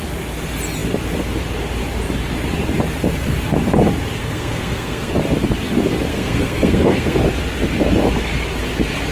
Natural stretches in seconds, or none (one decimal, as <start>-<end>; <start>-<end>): 0.0-4.2; 5.1-6.1; 7.2-9.1